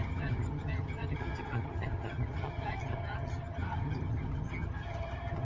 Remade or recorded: remade